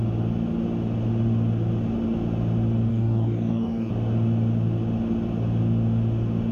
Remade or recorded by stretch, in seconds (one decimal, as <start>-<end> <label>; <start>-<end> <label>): 0.0-2.9 recorded; 2.9-3.9 remade; 3.9-6.5 recorded